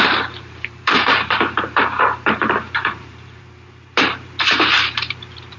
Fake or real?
fake